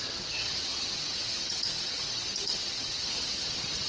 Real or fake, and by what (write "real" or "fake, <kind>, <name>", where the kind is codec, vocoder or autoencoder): fake, vocoder, HiFi-GAN